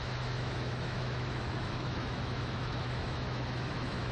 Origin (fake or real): fake